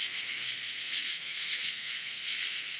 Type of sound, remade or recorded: remade